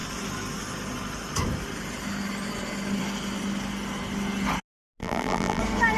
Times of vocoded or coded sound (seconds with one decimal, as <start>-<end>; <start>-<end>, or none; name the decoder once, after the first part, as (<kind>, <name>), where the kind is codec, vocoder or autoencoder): 5.0-5.6 (vocoder, BigVGAN v2)